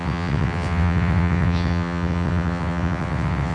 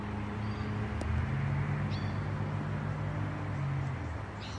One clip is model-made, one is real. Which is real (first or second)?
second